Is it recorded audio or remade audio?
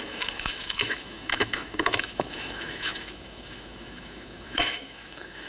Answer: remade